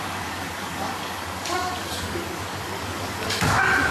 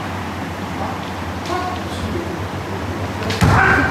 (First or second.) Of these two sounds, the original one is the second